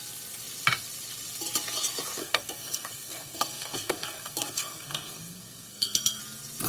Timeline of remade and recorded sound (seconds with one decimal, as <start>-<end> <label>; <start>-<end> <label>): 0.0-2.2 recorded; 2.2-6.2 remade; 6.2-6.7 recorded